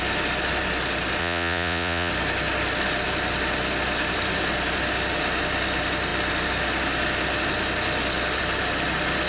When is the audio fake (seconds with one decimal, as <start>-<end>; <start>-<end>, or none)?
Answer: 1.2-2.1